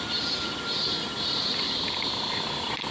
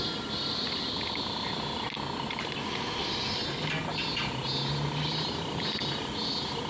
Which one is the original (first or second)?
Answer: second